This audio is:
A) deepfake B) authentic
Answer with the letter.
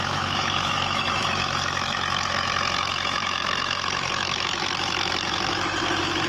A